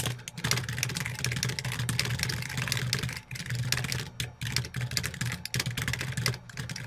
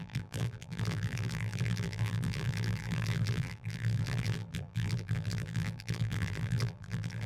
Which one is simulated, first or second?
second